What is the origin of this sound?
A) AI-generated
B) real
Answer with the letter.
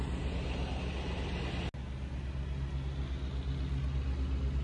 B